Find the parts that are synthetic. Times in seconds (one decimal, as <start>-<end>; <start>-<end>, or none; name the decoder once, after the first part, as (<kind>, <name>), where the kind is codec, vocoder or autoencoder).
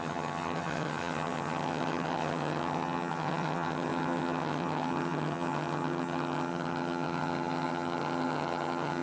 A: 0.0-9.0 (vocoder, HiFi-GAN)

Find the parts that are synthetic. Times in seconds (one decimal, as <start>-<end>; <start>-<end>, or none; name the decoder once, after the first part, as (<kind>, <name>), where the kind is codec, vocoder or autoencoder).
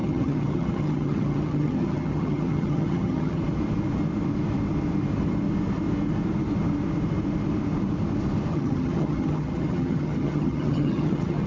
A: 0.0-3.4 (vocoder, HiFi-GAN); 8.5-11.5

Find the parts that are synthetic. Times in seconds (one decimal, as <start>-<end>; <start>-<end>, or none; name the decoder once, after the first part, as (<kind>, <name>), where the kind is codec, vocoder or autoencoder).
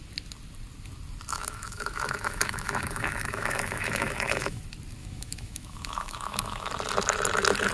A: 1.3-4.6 (autoencoder, DAC-VAE); 5.0-6.7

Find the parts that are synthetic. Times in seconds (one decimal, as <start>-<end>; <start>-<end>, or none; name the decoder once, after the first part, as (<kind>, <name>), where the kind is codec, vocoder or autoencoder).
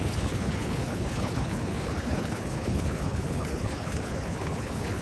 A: 0.0-5.0 (codec, HILCodec)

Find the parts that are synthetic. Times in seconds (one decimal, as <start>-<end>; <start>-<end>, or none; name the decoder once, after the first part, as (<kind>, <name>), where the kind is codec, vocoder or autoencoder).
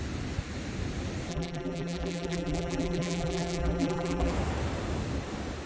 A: 1.3-4.3 (vocoder, BigVGAN v2)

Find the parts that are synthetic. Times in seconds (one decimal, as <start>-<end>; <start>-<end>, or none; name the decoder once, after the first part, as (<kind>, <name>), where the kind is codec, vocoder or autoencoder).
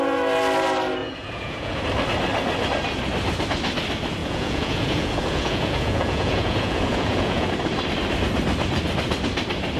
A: 1.0-1.8 (vocoder, Vocos); 4.2-7.5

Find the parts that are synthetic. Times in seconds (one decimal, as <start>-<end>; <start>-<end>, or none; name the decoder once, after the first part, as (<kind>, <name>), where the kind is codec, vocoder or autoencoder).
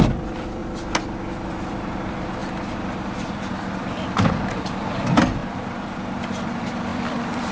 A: 0.0-0.6 (vocoder, BigVGAN v2); 1.5-7.5